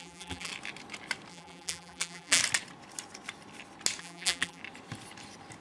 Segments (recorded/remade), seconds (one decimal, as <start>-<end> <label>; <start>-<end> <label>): 0.0-0.5 remade; 0.5-1.3 recorded; 1.3-2.4 remade; 2.4-4.0 recorded; 4.0-4.6 remade; 4.6-5.6 recorded